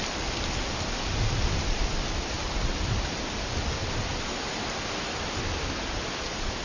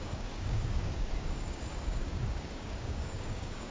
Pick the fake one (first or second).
second